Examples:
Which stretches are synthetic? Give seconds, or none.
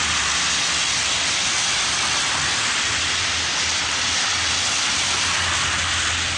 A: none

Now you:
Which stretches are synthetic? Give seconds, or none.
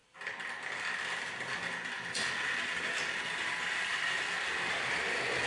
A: none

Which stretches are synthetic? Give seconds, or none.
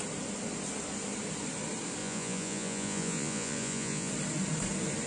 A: 2.0-4.1